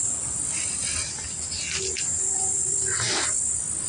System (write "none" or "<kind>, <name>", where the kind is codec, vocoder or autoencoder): none